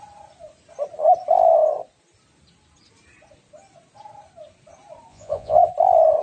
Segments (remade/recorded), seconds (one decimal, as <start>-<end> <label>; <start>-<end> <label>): 0.0-5.1 recorded; 5.1-5.7 remade; 5.7-6.2 recorded